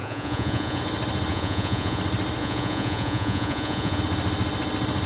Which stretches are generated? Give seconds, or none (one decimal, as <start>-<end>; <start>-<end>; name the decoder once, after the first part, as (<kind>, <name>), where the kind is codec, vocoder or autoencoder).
0.0-0.8 (vocoder, Vocos); 1.3-2.0; 2.4-4.0